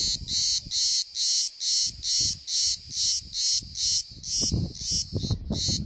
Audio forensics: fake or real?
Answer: real